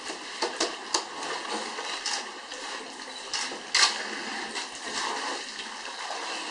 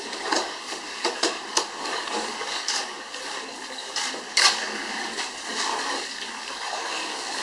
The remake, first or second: second